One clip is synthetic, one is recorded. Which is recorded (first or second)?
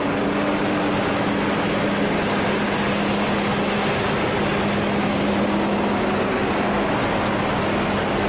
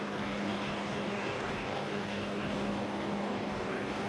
first